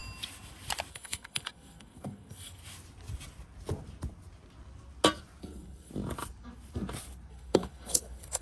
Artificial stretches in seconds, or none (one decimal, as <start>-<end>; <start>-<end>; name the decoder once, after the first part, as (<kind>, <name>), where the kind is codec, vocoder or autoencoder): 0.9-2.6 (codec, SNAC); 5.4-5.9; 7.3-8.4